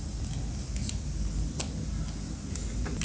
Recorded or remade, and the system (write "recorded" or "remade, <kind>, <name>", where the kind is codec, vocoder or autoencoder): recorded